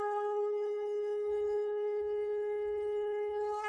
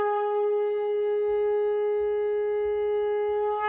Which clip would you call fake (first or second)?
first